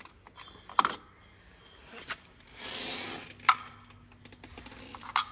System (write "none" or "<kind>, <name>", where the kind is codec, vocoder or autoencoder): none